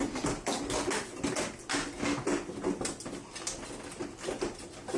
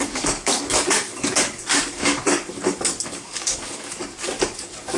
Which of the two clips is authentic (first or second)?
first